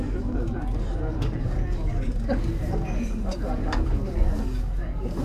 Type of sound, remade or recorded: remade